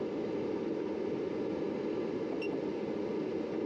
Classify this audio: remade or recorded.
recorded